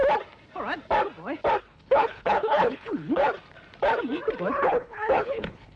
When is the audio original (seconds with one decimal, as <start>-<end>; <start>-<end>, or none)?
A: 0.0-1.6; 3.2-4.5